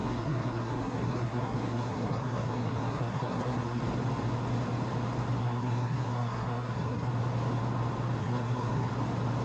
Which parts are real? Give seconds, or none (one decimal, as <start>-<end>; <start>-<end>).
3.8-5.4; 7.1-8.2; 8.9-9.4